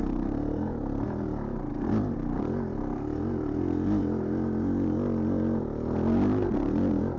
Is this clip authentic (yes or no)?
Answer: yes